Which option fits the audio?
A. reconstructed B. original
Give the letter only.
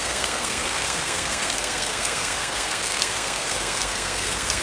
A